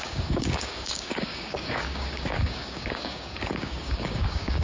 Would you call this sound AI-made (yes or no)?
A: yes